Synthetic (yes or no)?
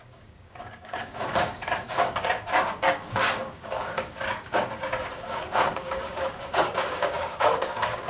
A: yes